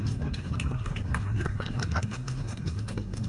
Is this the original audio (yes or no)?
no